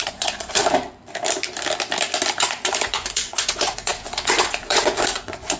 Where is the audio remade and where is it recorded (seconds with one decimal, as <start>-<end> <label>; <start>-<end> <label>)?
0.0-0.6 remade; 0.6-2.4 recorded; 2.4-5.6 remade